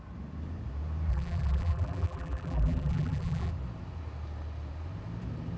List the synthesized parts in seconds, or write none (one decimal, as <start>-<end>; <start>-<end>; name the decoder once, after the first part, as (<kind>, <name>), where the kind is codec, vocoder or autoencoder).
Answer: 1.1-3.5 (vocoder, BigVGAN v2)